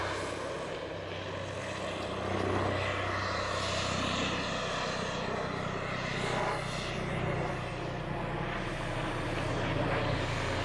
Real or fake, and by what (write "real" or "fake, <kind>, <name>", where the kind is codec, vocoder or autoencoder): real